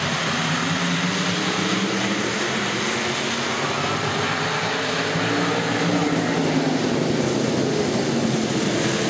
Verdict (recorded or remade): recorded